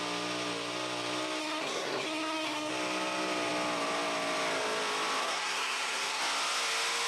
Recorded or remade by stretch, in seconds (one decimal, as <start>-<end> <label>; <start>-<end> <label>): 0.0-1.4 recorded; 1.4-2.7 remade; 2.7-5.2 recorded; 5.2-6.2 remade; 6.2-7.1 recorded